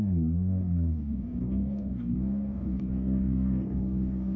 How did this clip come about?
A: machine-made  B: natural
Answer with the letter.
A